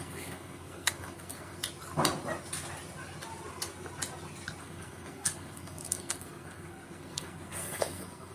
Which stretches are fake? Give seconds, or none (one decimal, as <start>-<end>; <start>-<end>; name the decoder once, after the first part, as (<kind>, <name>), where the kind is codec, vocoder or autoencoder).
0.0-1.6 (codec, SNAC); 4.6-8.3